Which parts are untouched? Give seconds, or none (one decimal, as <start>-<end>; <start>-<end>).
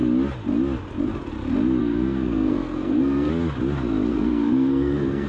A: 0.0-1.8; 3.3-4.1